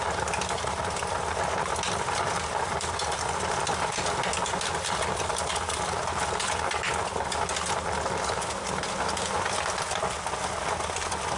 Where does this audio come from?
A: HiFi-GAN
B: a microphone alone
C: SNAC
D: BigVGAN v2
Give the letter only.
B